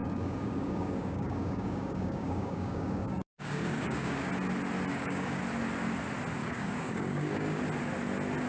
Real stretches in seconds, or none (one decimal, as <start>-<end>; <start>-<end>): 4.3-4.9; 5.4-6.4; 7.6-8.5